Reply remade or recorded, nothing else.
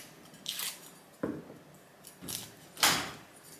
recorded